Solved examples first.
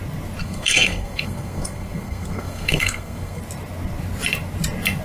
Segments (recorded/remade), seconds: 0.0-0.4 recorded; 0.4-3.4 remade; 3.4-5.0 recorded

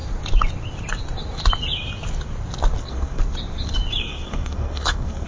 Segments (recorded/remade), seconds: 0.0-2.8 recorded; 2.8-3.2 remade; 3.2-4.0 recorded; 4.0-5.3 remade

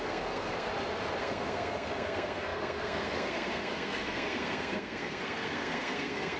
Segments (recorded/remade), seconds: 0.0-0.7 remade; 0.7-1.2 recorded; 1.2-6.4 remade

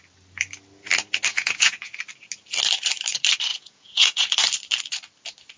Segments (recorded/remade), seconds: 0.0-1.3 recorded; 1.3-2.0 remade; 2.0-3.5 recorded; 3.5-4.3 remade; 4.3-5.6 recorded